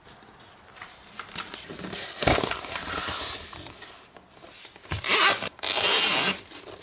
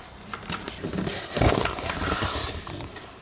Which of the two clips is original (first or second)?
first